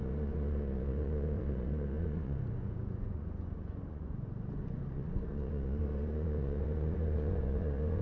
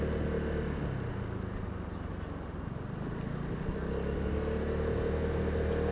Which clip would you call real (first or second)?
second